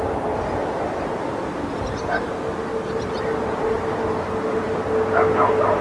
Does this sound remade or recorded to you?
recorded